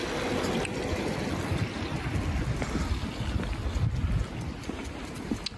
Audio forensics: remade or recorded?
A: recorded